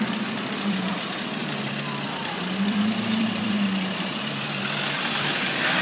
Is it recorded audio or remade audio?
remade